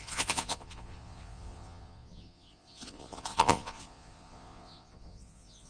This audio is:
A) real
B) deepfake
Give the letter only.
B